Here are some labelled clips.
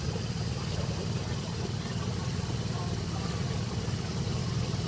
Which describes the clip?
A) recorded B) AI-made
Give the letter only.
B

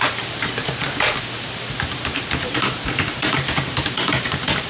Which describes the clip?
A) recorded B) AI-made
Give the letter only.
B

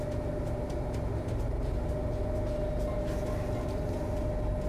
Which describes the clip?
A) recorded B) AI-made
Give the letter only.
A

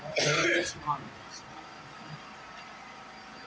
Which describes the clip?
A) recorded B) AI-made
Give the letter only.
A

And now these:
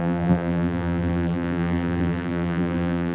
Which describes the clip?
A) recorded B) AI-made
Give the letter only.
B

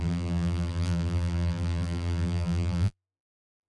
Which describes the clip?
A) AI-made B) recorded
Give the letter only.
A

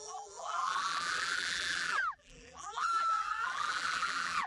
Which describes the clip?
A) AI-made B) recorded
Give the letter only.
A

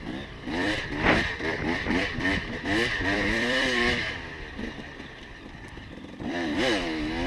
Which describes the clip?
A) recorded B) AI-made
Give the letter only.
B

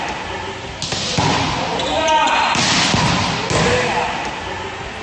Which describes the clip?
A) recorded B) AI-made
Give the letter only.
A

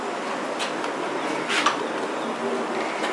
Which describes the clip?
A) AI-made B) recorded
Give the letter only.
A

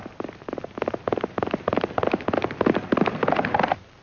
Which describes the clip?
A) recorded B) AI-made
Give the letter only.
A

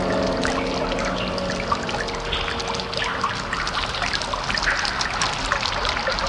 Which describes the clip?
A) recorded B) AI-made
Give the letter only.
A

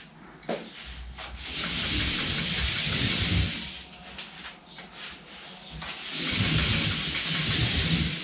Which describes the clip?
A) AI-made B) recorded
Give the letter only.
B